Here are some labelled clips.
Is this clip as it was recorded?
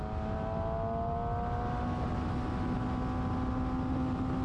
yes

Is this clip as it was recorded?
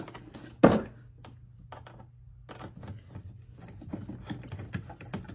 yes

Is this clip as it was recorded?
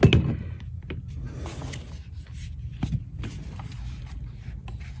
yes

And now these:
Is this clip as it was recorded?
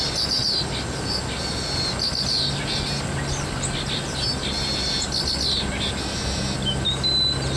yes